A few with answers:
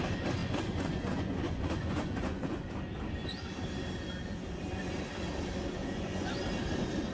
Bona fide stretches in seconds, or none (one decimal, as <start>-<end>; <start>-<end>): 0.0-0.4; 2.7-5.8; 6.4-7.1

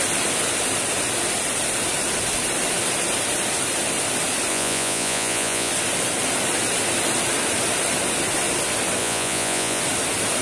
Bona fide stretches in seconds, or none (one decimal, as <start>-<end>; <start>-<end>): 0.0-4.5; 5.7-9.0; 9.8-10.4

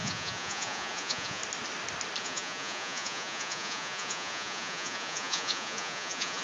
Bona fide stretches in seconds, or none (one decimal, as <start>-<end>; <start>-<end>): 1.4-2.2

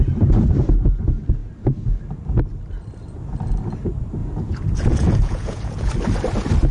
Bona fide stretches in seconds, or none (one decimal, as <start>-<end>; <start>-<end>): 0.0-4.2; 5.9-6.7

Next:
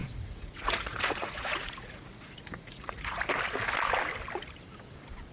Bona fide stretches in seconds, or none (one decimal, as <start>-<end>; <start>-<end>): 3.2-5.3

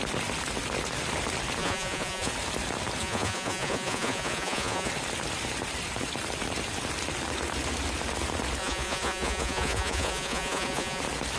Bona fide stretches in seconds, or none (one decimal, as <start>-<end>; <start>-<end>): 0.0-1.6; 2.3-3.0; 4.9-8.6; 11.0-11.4

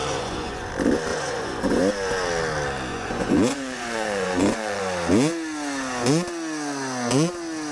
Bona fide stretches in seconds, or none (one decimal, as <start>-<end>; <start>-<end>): 0.7-1.1; 1.8-2.9; 4.8-7.7